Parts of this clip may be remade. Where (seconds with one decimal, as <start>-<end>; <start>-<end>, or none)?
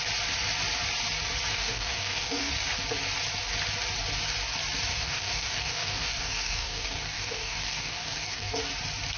1.5-2.5; 4.9-8.6